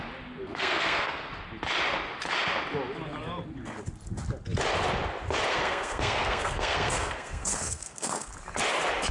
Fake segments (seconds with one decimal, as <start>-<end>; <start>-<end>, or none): 0.4-1.3; 5.5-8.3